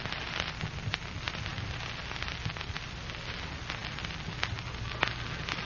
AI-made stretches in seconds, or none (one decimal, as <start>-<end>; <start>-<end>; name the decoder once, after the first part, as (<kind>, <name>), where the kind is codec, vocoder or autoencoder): none